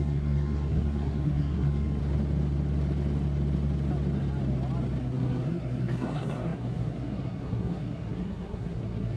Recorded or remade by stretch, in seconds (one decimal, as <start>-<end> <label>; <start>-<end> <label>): 0.0-2.0 remade; 2.0-5.0 recorded; 5.0-9.2 remade